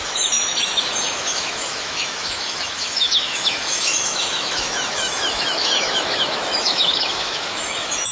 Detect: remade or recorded remade